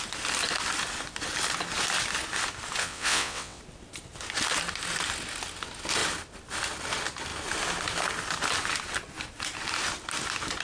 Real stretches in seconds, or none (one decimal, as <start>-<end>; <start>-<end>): 0.0-2.8; 3.6-10.6